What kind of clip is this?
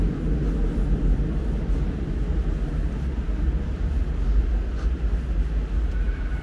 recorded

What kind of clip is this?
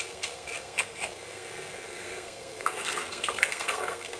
remade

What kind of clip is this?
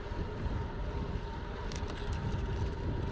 recorded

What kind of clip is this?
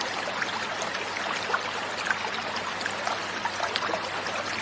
recorded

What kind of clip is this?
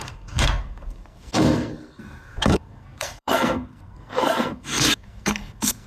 remade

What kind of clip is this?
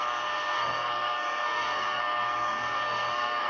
remade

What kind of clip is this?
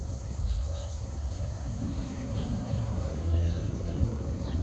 remade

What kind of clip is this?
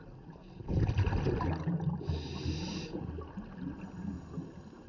recorded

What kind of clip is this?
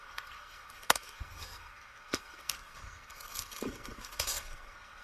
remade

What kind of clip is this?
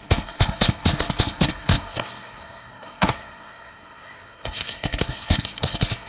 remade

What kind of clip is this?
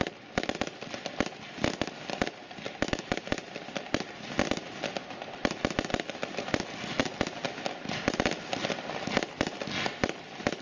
recorded